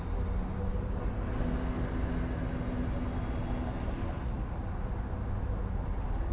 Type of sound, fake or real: real